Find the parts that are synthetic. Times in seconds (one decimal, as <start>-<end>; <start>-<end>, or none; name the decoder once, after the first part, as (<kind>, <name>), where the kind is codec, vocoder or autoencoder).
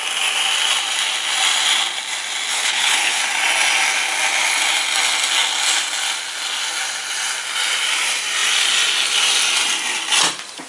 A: 2.5-3.2 (codec, HILCodec)